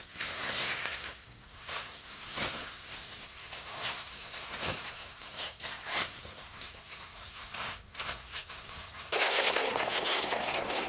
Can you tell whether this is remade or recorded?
remade